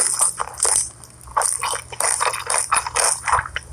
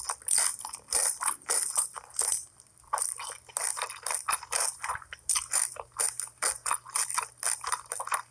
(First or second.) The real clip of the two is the first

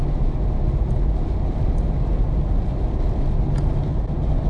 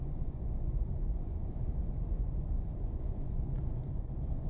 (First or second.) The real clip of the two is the first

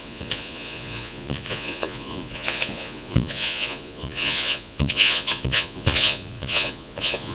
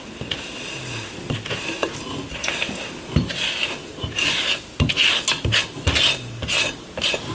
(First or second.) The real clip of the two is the second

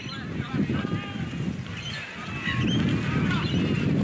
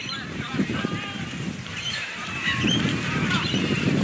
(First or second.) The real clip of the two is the first